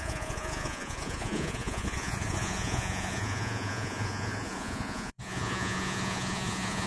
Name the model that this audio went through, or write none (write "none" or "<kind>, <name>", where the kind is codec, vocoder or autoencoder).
vocoder, Vocos